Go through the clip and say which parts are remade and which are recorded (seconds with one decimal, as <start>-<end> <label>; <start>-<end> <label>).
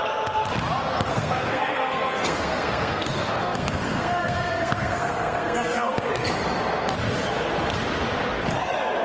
0.0-1.1 recorded; 1.1-6.1 remade; 6.1-9.0 recorded